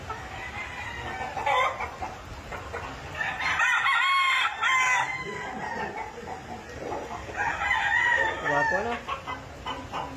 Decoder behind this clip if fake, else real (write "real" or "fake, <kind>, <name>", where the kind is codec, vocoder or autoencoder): real